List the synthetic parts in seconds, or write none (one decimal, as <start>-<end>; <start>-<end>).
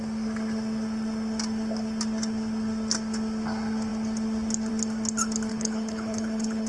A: 5.5-6.7